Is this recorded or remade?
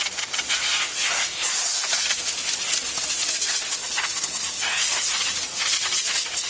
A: recorded